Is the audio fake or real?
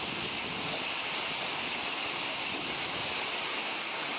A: fake